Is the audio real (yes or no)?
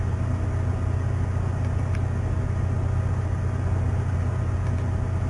yes